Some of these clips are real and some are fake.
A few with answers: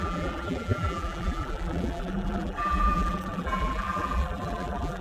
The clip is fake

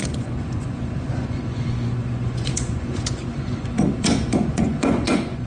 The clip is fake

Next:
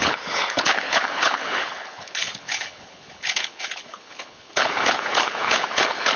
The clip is fake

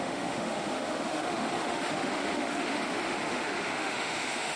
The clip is fake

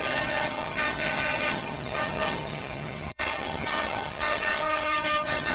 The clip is fake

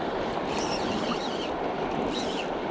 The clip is real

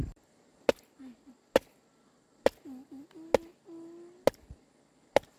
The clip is real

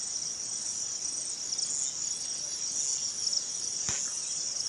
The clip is real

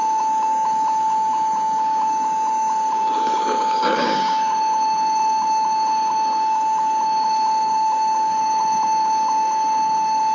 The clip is fake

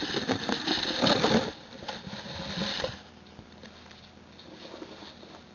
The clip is real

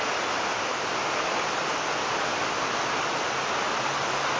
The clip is real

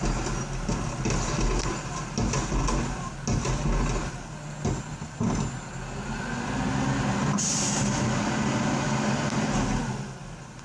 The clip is real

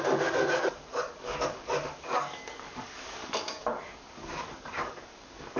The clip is fake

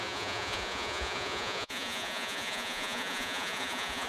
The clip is fake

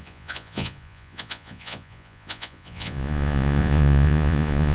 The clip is fake